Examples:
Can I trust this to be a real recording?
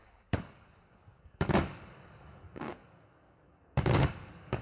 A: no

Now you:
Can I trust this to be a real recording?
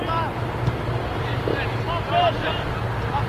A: yes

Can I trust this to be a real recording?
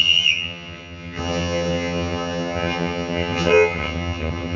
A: no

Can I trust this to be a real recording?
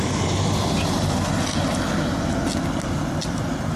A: yes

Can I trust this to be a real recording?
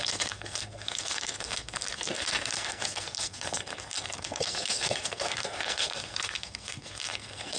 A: no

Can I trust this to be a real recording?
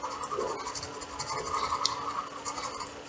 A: yes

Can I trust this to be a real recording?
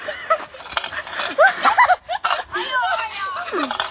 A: no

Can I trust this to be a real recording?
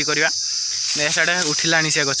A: yes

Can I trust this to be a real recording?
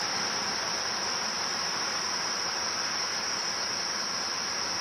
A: yes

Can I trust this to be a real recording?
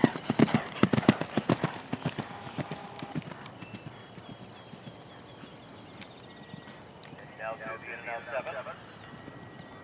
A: yes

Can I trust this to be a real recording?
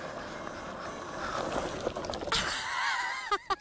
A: yes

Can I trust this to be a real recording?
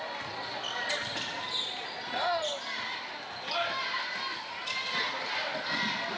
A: yes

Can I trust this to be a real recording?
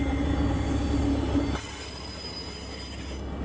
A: yes